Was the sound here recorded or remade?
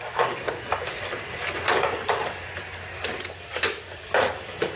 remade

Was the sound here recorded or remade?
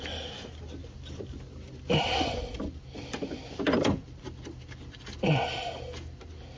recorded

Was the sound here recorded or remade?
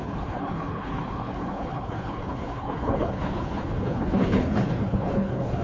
remade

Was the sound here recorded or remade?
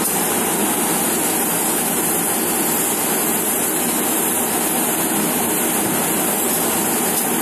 recorded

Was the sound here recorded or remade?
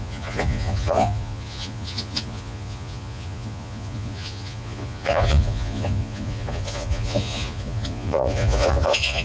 remade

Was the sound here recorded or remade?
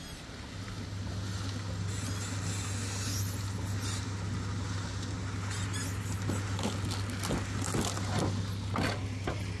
recorded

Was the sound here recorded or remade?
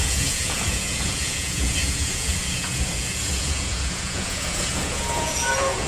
remade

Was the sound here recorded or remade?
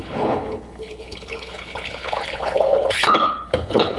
remade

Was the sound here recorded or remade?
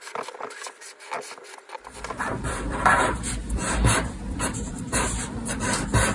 remade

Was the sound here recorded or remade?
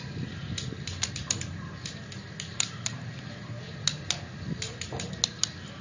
recorded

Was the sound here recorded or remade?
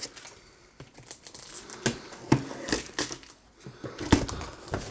recorded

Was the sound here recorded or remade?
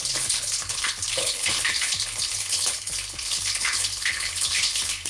remade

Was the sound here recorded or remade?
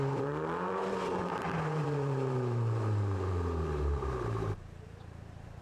remade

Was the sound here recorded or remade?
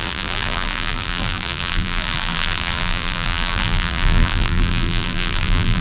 remade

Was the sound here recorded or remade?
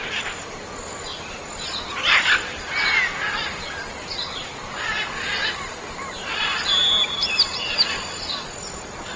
remade